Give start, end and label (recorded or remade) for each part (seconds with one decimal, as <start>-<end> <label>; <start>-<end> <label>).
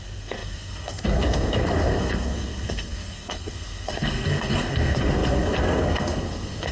0.0-6.7 remade